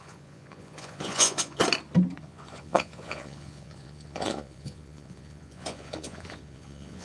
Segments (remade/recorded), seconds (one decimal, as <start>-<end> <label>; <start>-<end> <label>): 0.0-1.6 remade; 1.6-2.2 recorded; 2.2-7.0 remade